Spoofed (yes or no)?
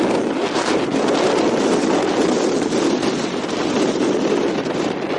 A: no